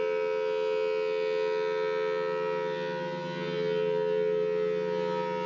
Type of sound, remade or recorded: recorded